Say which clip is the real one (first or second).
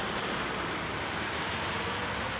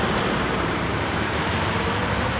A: first